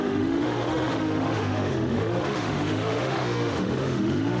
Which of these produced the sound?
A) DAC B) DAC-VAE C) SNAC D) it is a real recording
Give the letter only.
B